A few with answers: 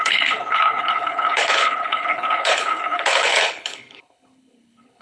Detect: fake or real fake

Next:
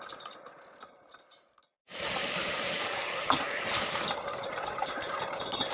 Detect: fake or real real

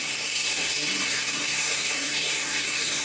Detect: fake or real fake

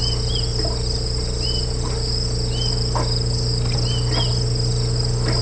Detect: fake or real real